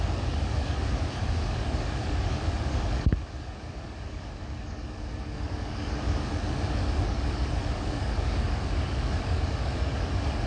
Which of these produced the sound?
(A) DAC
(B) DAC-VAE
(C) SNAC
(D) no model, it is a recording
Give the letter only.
A